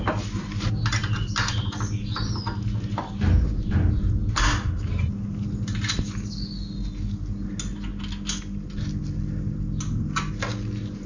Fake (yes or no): no